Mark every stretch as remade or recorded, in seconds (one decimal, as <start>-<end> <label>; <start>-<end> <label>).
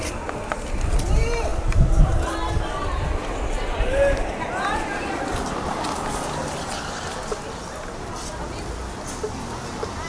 0.0-10.1 recorded